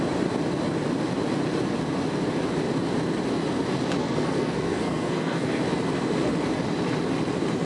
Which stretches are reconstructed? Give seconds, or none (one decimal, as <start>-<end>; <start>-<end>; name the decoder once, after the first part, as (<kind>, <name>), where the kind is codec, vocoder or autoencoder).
4.0-5.6 (codec, SNAC)

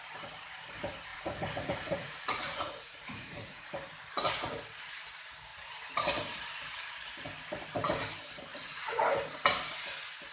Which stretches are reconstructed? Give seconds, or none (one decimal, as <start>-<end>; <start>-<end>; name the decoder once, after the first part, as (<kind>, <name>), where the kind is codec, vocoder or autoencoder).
1.1-3.7 (vocoder, Vocos); 8.5-9.1

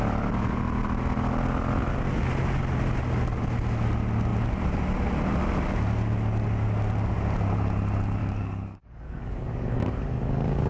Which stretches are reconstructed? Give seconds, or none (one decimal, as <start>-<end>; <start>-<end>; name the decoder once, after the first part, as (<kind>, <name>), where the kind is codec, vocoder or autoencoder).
8.2-10.7 (codec, DAC)

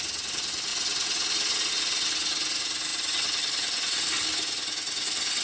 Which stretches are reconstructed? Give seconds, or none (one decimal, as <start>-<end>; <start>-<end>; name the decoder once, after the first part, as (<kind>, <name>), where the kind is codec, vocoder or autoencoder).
none

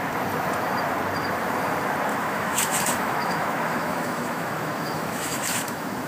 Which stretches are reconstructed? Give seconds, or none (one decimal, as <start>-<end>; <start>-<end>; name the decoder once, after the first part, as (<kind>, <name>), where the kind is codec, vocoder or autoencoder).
2.1-6.1 (autoencoder, DAC-VAE)

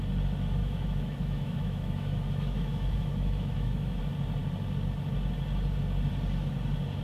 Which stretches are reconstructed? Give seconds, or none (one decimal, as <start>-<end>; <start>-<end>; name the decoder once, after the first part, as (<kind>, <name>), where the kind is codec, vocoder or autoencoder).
0.6-4.0 (autoencoder, DAC-VAE)

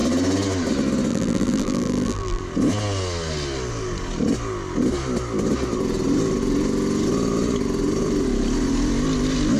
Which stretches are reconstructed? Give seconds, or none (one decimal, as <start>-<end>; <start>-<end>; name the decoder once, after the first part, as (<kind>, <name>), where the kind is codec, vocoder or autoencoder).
1.1-2.4 (vocoder, BigVGAN v2)

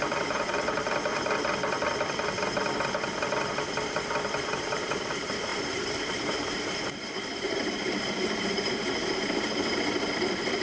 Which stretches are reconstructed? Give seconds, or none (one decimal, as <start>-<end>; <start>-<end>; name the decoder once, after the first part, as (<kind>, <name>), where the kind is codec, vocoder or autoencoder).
0.0-1.1 (vocoder, BigVGAN v2); 3.5-10.6